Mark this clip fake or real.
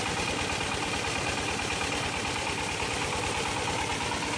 real